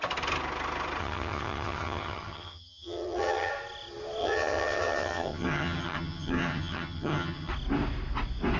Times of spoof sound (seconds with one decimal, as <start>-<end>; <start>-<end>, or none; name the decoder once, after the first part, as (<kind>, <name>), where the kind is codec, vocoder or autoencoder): 1.0-3.5 (vocoder, HiFi-GAN); 4.2-7.5